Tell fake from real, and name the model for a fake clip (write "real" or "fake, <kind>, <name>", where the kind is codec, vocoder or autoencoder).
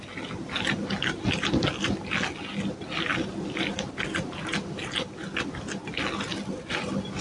real